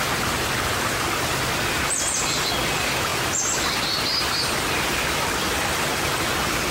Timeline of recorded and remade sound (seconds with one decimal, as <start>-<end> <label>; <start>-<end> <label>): 0.0-6.7 recorded